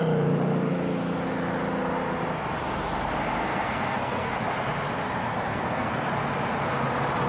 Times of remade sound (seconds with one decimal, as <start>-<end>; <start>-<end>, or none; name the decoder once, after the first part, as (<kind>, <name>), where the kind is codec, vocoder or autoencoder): 3.4-4.3 (codec, SNAC); 5.5-6.1

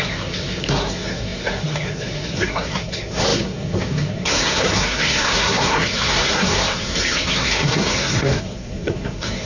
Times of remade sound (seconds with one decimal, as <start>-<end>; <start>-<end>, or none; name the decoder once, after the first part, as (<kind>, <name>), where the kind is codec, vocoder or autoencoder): 0.0-9.4 (codec, SNAC)